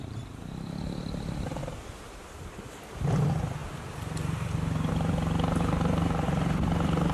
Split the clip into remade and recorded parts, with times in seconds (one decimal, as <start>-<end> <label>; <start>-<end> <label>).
0.0-1.6 remade; 1.6-2.5 recorded; 2.5-3.6 remade; 3.6-4.9 recorded; 4.9-7.1 remade